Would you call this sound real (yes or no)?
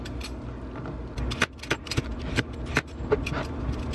yes